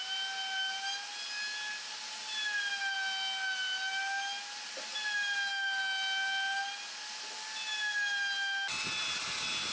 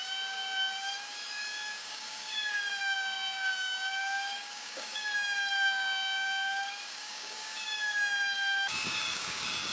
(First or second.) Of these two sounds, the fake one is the second